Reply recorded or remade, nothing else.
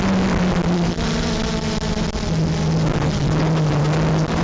recorded